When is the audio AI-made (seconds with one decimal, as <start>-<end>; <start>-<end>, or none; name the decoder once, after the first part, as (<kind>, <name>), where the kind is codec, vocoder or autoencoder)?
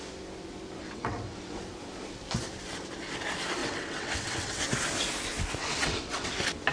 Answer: 0.8-1.6 (vocoder, WaveNeXt); 3.6-4.6; 5.6-6.3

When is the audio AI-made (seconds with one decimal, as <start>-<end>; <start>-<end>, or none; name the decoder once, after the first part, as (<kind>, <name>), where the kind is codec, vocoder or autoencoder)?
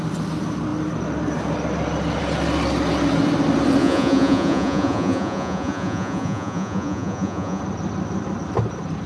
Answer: 3.8-7.6 (vocoder, Vocos)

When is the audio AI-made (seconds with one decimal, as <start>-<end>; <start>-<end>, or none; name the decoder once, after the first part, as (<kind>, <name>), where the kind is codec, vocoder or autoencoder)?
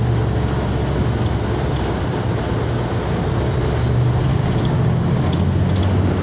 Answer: 4.3-5.2 (codec, DAC)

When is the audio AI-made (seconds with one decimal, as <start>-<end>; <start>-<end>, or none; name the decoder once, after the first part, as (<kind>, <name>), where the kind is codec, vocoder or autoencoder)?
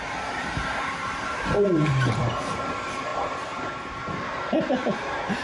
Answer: 0.0-5.4 (vocoder, BigVGAN v2)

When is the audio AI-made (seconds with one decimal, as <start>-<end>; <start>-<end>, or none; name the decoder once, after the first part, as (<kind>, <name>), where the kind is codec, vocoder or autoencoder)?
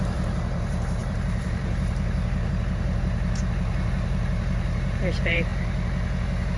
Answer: 0.0-5.5 (vocoder, BigVGAN v2)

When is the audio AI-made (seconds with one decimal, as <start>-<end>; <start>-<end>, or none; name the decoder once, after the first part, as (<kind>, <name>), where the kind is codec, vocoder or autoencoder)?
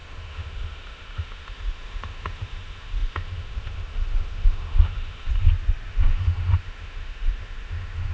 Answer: 0.0-5.3 (autoencoder, DAC-VAE); 5.9-8.1